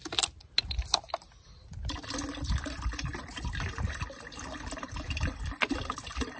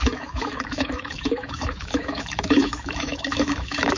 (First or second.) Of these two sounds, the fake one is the second